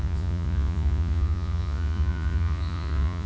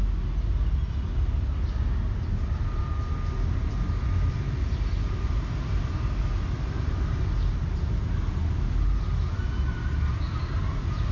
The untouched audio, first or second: second